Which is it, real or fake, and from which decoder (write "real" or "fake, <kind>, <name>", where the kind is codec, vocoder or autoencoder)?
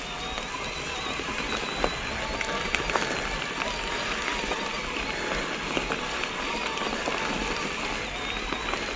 real